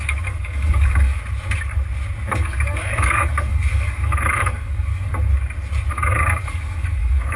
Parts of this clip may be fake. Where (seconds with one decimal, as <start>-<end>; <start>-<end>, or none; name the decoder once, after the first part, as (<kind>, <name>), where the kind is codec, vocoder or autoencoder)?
0.0-1.2 (codec, DAC); 2.3-5.1; 5.9-7.4